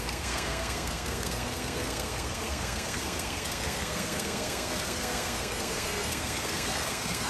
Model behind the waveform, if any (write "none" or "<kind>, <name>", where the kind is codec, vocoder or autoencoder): codec, SNAC